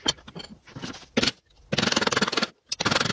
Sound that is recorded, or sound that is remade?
recorded